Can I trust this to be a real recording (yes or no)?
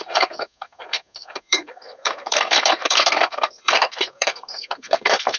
no